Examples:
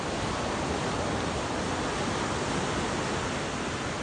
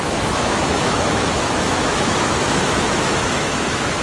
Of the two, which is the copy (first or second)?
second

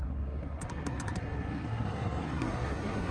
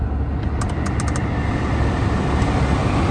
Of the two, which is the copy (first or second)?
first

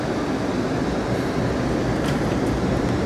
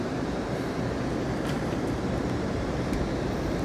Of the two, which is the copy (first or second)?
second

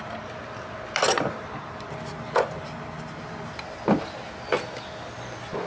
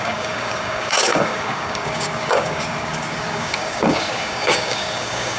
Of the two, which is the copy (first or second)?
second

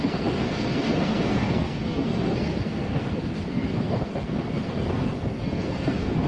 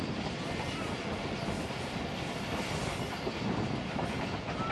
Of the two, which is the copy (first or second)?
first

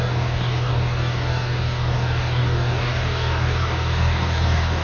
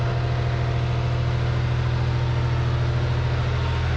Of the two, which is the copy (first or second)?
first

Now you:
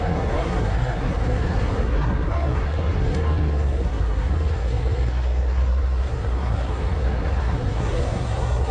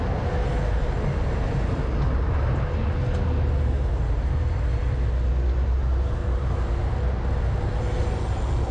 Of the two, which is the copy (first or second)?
first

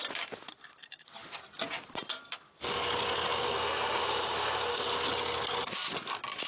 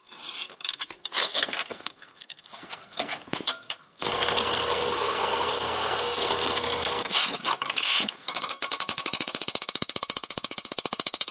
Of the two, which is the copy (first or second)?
second